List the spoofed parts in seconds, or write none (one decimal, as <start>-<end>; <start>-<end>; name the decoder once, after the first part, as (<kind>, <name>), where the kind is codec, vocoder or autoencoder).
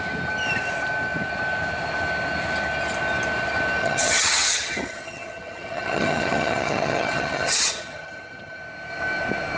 3.8-8.6 (vocoder, HiFi-GAN)